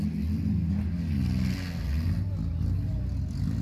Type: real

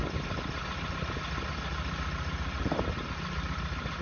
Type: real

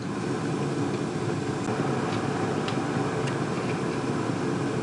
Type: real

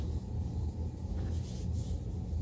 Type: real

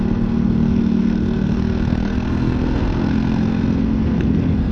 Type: fake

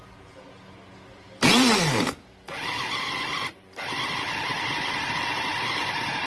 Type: real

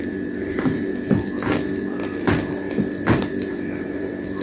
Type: real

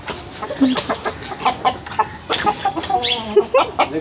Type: real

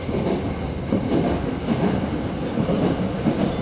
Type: real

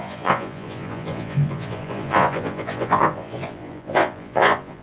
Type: fake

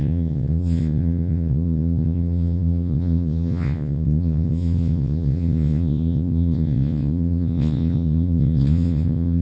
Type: fake